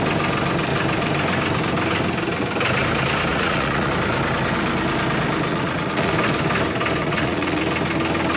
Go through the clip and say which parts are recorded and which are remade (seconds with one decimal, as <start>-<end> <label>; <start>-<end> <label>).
0.0-3.3 recorded; 3.3-3.9 remade; 3.9-5.5 recorded; 5.5-6.1 remade; 6.1-7.0 recorded; 7.0-7.6 remade; 7.6-8.4 recorded